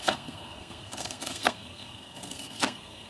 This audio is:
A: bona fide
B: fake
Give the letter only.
B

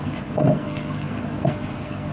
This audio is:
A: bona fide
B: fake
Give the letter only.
B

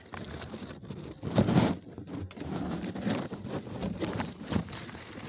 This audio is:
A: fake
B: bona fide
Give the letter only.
B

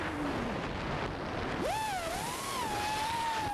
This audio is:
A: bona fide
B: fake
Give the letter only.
A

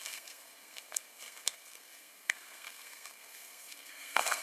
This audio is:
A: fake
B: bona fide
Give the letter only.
A